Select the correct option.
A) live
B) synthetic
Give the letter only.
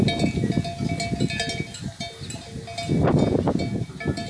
A